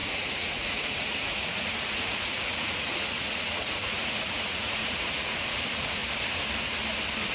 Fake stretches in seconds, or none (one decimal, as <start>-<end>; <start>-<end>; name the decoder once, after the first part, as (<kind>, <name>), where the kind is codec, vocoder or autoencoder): 0.0-6.0 (vocoder, Vocos)